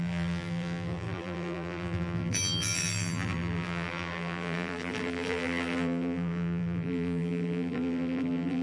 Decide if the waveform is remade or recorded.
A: remade